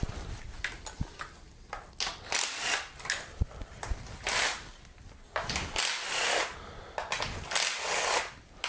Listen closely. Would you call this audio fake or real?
real